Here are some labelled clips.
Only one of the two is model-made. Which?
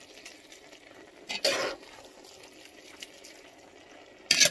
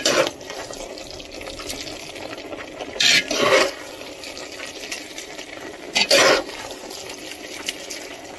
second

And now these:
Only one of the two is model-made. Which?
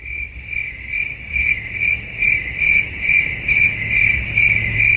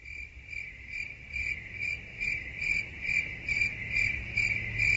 second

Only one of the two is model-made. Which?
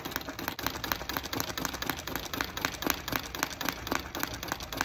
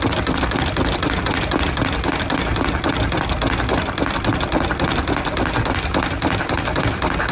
second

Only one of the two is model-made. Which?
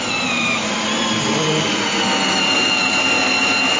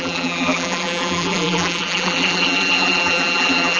second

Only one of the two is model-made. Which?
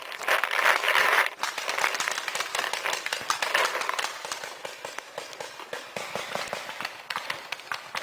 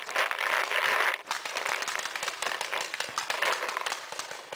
first